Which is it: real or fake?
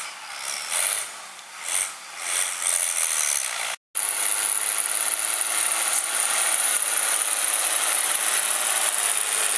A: real